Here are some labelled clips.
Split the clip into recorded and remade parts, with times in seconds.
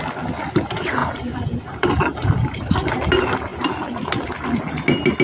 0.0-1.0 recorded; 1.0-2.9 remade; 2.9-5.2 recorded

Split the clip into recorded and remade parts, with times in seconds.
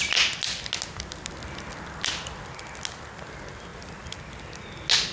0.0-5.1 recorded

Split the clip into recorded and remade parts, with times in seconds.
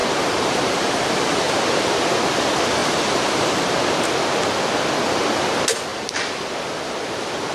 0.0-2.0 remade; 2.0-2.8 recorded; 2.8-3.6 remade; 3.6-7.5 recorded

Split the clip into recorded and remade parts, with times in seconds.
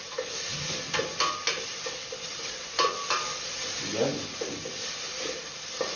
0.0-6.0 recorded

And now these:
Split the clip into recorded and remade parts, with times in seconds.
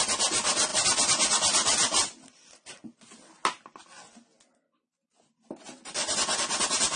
0.0-0.7 recorded; 0.7-2.7 remade; 2.7-6.0 recorded; 6.0-7.0 remade